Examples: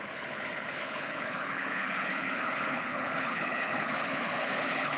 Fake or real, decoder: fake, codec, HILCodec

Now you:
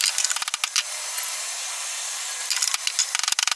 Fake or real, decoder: real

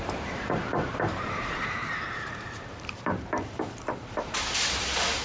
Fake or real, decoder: fake, vocoder, BigVGAN v2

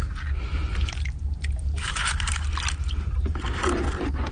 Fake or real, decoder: real